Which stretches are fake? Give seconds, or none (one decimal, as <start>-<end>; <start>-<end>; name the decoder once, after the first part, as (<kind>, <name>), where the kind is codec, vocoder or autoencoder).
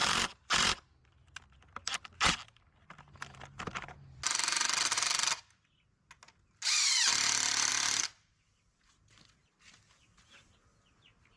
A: none